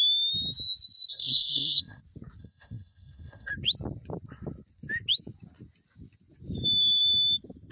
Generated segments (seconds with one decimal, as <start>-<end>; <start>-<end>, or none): 1.1-2.0; 2.4-3.5